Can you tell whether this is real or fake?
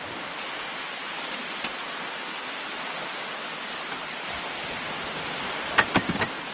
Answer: real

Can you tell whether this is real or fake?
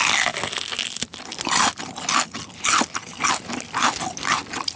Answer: real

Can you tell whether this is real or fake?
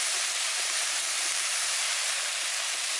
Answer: fake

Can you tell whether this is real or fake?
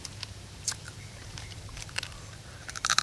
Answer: fake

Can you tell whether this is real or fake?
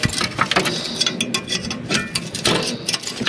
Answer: real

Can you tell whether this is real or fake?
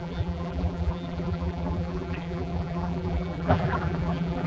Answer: fake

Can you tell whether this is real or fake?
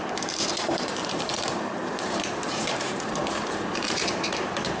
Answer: fake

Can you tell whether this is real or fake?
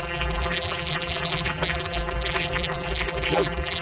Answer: fake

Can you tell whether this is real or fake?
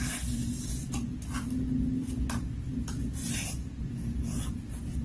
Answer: real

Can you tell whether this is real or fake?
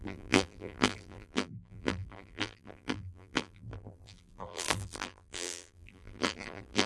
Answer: fake